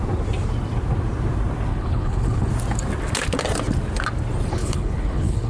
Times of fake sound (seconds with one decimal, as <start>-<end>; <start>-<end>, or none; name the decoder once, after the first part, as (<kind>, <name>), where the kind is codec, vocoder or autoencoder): 1.7-2.5 (codec, HILCodec); 4.6-5.5